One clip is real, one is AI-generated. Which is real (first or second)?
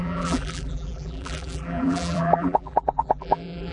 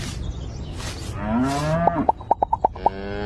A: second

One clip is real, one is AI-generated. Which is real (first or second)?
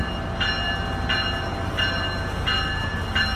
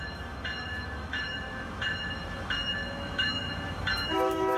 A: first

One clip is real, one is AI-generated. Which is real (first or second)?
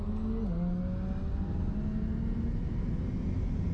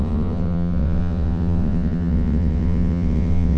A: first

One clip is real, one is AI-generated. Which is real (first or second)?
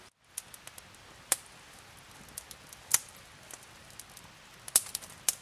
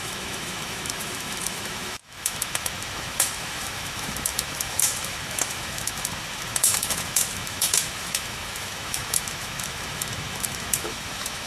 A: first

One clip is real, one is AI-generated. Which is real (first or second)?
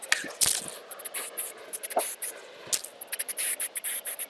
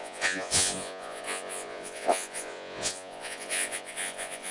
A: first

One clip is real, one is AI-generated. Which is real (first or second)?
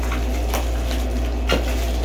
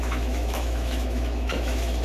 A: first